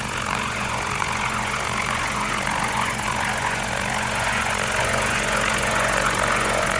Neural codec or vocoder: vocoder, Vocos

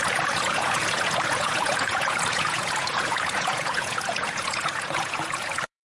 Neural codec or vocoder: vocoder, Vocos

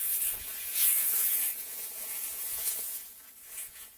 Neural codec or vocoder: vocoder, Vocos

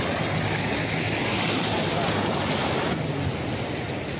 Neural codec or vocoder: none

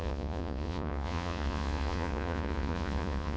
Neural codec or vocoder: vocoder, Vocos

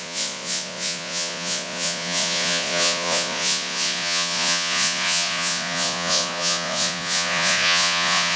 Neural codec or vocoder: vocoder, Vocos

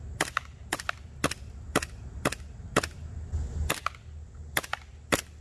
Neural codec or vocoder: none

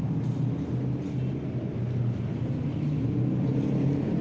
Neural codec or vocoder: none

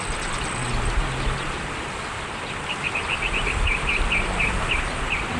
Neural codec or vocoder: none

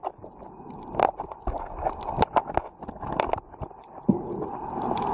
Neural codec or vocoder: none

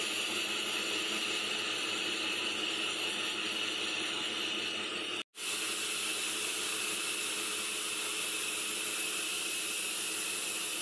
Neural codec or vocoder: none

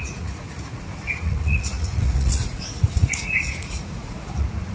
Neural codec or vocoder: vocoder, Vocos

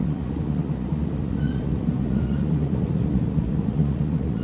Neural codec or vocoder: vocoder, Vocos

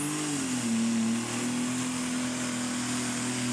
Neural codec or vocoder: none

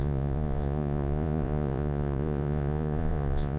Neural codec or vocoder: vocoder, Vocos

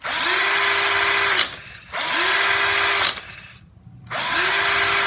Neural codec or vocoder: none